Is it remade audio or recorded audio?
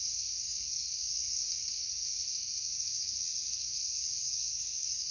remade